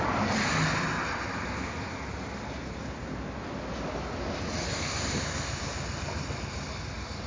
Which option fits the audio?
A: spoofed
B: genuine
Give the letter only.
B